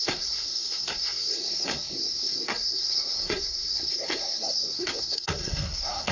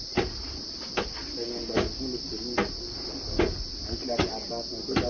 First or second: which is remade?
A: first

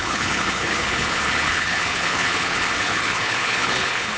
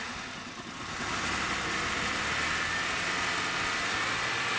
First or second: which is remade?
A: first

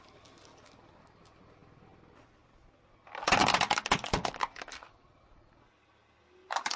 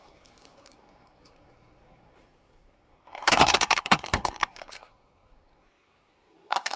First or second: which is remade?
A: second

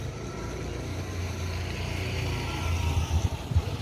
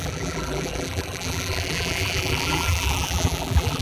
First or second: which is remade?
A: second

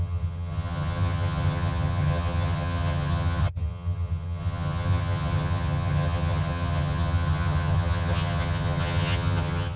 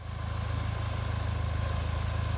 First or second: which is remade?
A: first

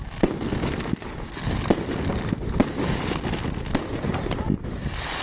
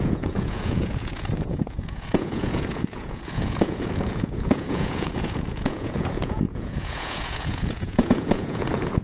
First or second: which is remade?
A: second